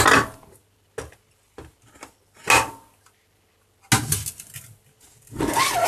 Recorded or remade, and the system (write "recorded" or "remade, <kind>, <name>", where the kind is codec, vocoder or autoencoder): recorded